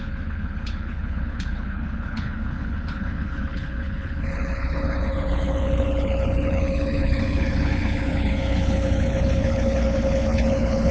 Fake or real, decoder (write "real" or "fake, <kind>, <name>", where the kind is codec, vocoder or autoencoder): fake, codec, HILCodec